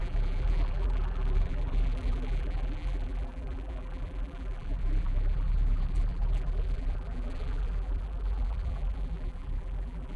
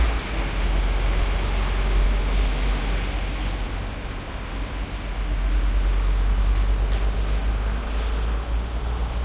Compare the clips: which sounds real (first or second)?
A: second